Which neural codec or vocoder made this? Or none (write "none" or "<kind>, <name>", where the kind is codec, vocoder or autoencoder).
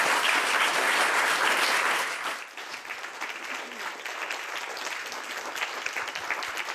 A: none